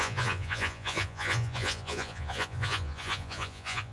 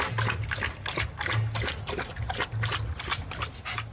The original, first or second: second